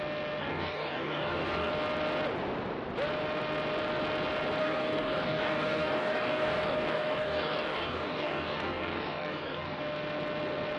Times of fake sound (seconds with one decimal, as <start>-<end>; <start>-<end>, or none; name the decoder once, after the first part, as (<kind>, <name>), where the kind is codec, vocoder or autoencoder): 0.4-1.7 (codec, DAC); 4.6-9.8